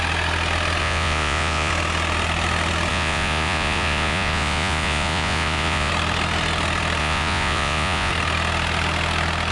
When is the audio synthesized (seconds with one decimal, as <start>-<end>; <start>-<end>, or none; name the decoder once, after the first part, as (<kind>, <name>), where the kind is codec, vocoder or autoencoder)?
0.8-1.7 (vocoder, Vocos); 2.9-5.9; 7.0-8.1